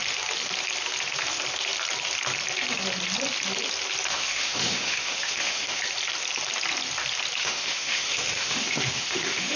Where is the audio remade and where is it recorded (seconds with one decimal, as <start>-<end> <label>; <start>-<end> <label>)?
0.0-4.1 recorded; 4.1-5.8 remade; 5.8-7.4 recorded; 7.4-9.6 remade